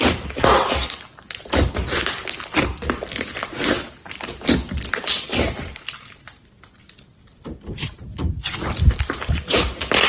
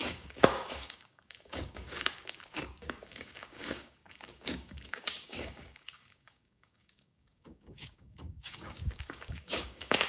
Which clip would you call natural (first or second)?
first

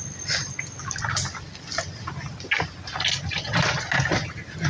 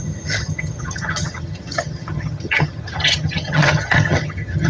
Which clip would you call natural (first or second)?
first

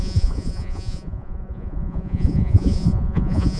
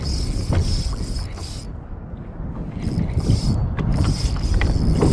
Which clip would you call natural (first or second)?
second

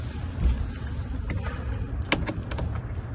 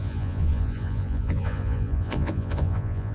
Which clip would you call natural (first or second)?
first